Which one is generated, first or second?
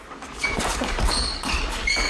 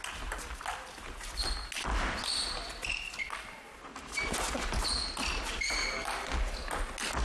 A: first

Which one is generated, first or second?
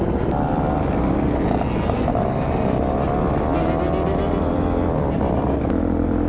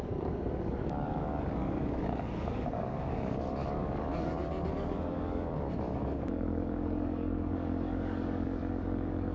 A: second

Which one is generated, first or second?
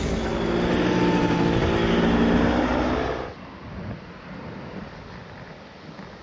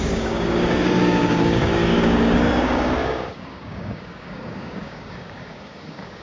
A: second